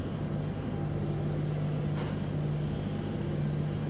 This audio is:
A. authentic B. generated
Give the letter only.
A